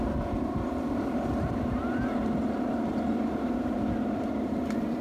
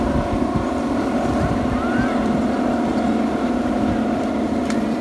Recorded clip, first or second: second